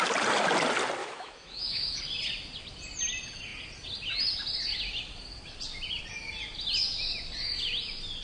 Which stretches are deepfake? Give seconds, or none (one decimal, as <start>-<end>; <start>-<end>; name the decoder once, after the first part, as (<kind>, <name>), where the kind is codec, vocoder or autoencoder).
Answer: 1.0-2.0 (autoencoder, DAC-VAE)